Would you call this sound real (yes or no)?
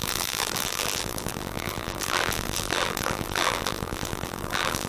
no